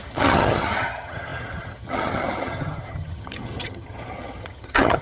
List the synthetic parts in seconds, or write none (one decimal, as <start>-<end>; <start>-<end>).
0.0-5.0

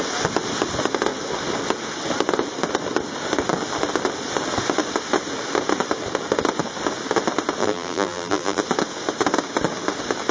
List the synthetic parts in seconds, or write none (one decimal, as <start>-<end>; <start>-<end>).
7.6-8.6

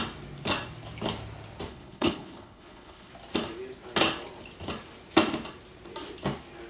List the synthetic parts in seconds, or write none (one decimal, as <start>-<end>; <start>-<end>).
1.7-3.1